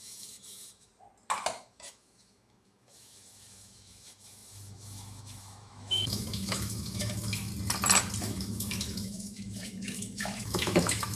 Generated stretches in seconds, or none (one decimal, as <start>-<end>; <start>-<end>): 0.0-0.9; 1.6-7.5; 8.2-11.2